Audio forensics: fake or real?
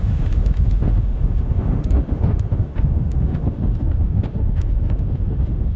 fake